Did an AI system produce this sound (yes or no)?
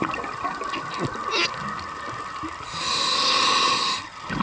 no